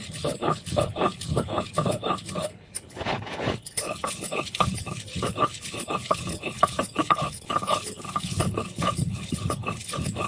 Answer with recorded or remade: remade